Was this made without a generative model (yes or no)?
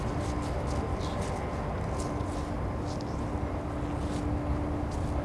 yes